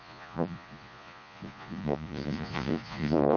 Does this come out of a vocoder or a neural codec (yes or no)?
yes